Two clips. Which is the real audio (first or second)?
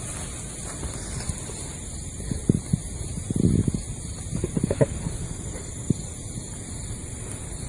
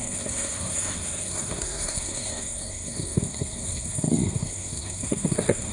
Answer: first